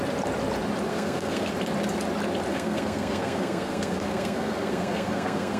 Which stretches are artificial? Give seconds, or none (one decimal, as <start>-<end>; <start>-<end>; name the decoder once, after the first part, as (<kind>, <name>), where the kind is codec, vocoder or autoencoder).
0.9-1.5 (codec, SNAC); 2.5-5.6